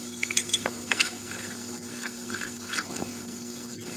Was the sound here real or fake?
fake